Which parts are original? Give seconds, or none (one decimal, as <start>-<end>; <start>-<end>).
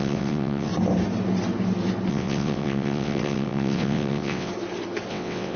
0.7-2.1; 4.5-5.1